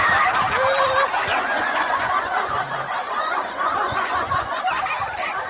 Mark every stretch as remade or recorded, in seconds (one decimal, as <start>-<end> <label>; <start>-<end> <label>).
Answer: 0.0-1.3 recorded; 1.3-4.6 remade; 4.6-5.5 recorded